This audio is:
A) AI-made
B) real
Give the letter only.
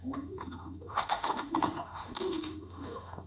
A